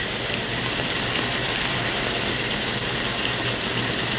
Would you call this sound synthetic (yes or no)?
no